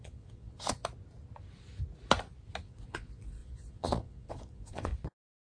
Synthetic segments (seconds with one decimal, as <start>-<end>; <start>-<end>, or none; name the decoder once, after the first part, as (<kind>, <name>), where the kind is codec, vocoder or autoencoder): 0.0-0.8 (vocoder, Vocos); 2.6-4.9

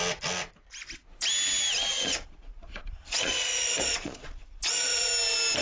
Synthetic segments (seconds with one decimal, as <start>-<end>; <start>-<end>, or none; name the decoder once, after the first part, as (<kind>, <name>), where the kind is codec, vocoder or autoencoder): 1.9-5.1 (vocoder, Vocos)

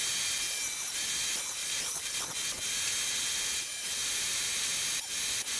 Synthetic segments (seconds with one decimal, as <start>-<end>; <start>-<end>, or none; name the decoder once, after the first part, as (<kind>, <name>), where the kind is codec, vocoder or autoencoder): 1.6-2.2 (vocoder, Vocos)

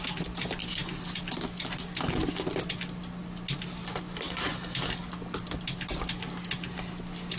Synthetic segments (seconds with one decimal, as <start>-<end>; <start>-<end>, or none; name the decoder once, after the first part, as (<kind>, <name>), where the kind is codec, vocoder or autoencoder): none

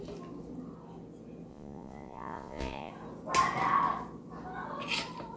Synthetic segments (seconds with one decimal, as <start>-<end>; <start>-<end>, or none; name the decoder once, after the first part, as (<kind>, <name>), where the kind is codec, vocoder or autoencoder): 1.5-2.9 (vocoder, Vocos)

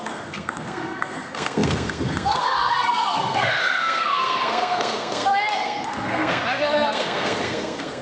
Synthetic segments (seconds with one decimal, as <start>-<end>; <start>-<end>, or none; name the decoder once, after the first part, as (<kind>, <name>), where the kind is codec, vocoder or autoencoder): 0.0-8.0 (codec, SNAC)